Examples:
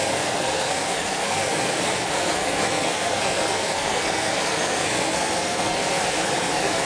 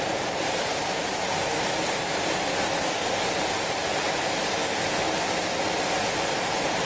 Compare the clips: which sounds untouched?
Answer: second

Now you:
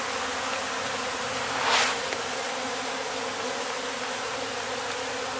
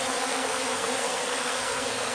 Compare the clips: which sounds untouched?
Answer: first